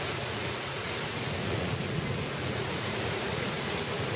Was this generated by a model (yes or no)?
yes